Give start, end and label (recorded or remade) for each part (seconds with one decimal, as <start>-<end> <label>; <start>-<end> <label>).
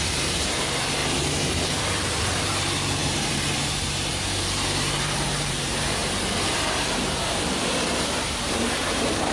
0.0-1.0 remade; 1.0-1.8 recorded; 1.8-9.3 remade